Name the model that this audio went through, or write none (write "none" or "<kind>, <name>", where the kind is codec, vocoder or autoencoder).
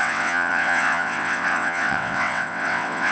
vocoder, WaveNeXt